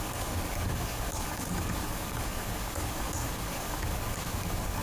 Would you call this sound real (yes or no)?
no